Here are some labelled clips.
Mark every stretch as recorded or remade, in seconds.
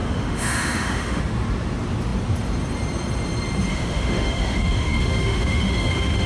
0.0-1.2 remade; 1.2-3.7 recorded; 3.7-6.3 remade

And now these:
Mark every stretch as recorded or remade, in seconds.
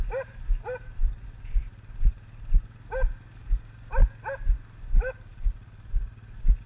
0.0-6.7 recorded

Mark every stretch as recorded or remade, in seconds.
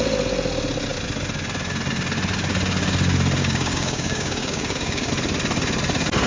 0.0-3.4 recorded; 3.4-5.1 remade; 5.1-6.3 recorded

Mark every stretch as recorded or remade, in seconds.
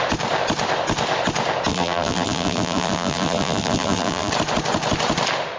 0.0-1.7 recorded; 1.7-4.3 remade; 4.3-5.6 recorded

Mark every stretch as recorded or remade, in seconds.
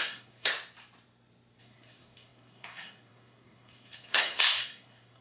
0.0-0.5 remade; 0.5-1.6 recorded; 1.6-5.2 remade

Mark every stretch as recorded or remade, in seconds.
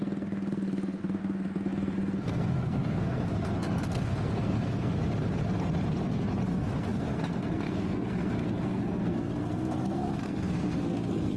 0.0-4.9 remade; 4.9-6.5 recorded; 6.5-11.4 remade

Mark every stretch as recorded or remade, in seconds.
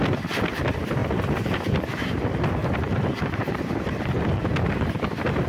0.0-2.6 recorded; 2.6-4.4 remade; 4.4-5.5 recorded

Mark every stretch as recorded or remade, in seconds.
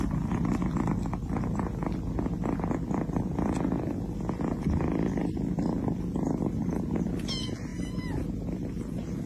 0.0-9.3 recorded